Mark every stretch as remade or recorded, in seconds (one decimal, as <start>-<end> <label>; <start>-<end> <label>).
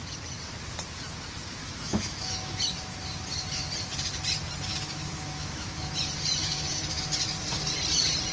0.0-1.6 recorded; 1.6-2.6 remade; 2.6-4.7 recorded; 4.7-5.9 remade; 5.9-6.4 recorded; 6.4-7.0 remade; 7.0-8.3 recorded